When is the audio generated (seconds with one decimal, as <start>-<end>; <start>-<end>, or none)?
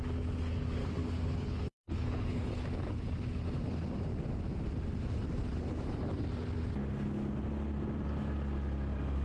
0.8-2.6